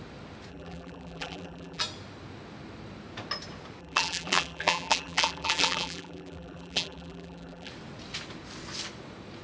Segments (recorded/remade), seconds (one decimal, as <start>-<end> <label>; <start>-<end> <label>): 0.0-0.5 recorded; 0.5-1.8 remade; 1.8-3.8 recorded; 3.8-7.7 remade; 7.7-9.4 recorded